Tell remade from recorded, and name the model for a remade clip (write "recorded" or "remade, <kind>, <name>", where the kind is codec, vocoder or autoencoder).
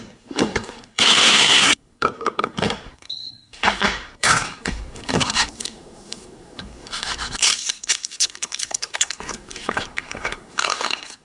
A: remade, codec, SNAC